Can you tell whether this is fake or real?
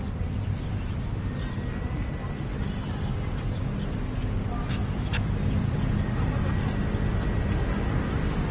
real